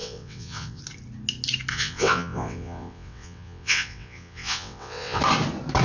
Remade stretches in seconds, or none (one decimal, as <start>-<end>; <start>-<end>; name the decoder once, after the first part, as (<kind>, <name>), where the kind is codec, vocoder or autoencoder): 0.0-0.8 (vocoder, WaveNeXt); 1.7-5.2